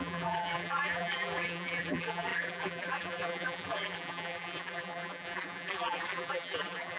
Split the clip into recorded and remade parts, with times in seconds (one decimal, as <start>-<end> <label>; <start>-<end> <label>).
0.0-7.0 remade